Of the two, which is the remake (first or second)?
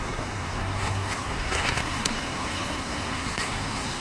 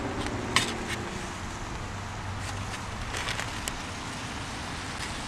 first